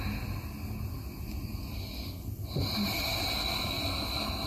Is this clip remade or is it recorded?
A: recorded